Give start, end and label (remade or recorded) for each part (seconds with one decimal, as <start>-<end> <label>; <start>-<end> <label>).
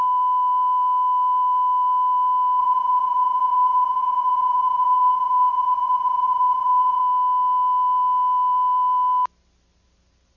0.0-2.6 recorded; 2.6-7.0 remade; 7.0-10.4 recorded